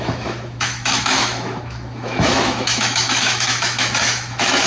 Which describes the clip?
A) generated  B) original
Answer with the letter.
A